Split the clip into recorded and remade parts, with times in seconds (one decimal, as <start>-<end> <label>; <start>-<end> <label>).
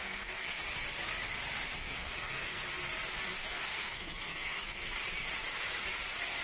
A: 0.0-0.6 remade; 0.6-1.8 recorded; 1.8-2.6 remade; 2.6-3.4 recorded; 3.4-4.9 remade; 4.9-6.4 recorded